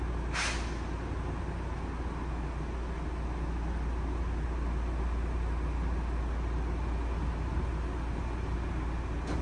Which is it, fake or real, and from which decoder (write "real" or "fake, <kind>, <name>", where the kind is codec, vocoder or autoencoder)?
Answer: real